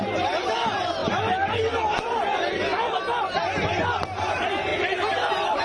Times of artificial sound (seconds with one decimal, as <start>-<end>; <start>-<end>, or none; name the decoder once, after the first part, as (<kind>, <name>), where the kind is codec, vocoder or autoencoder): 2.7-3.3 (vocoder, BigVGAN v2); 4.7-5.6